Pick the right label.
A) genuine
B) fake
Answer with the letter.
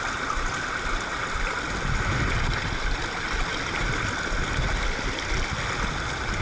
A